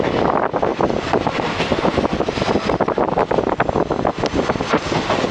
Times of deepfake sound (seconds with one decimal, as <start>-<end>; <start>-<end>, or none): 0.7-3.2

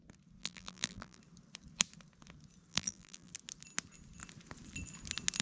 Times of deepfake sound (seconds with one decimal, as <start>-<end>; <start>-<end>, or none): 0.4-1.2; 2.7-3.3

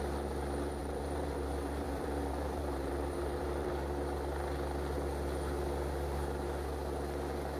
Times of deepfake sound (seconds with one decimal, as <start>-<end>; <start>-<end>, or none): 0.8-3.7

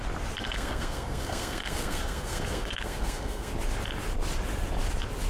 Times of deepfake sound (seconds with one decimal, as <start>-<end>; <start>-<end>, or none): 0.4-3.5

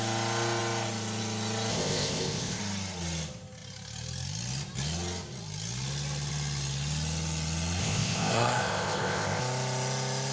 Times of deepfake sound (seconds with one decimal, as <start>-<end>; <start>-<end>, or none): 1.7-2.6; 7.8-9.4

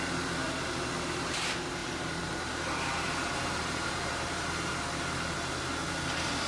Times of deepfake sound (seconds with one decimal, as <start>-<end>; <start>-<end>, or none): 1.8-5.4

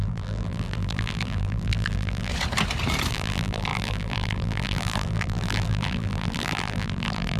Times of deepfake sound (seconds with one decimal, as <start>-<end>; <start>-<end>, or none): 0.0-2.3; 3.1-7.4

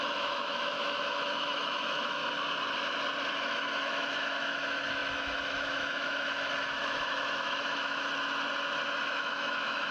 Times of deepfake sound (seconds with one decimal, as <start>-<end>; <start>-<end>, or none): 0.0-2.2; 3.3-8.0; 9.1-9.9